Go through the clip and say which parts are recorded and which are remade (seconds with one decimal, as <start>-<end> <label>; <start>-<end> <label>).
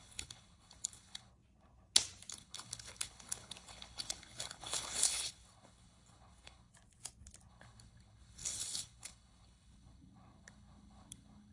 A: 0.0-1.3 remade; 1.3-2.3 recorded; 2.3-6.7 remade; 6.7-7.5 recorded; 7.5-11.5 remade